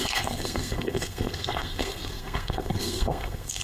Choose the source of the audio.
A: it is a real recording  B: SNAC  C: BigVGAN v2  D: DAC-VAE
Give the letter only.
B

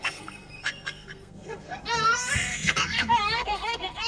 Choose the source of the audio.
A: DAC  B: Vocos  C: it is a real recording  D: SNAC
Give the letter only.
D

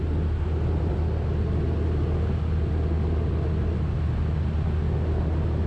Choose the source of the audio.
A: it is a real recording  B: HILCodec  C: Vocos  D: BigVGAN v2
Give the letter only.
A